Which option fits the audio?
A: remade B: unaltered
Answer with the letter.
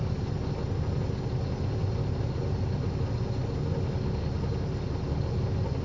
B